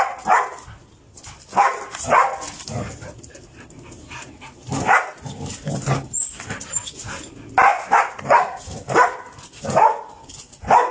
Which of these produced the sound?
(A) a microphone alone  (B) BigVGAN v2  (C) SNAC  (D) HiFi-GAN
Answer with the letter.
A